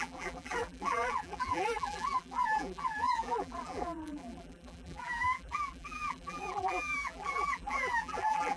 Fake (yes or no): yes